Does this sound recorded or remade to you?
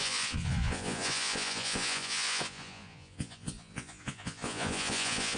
remade